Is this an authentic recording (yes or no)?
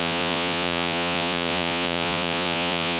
no